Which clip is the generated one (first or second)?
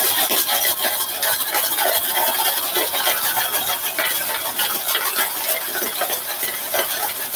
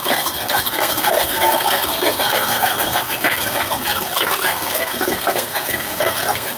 second